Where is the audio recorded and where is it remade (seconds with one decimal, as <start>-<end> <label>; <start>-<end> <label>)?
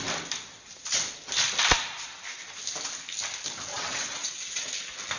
0.0-3.7 recorded; 3.7-4.7 remade; 4.7-5.2 recorded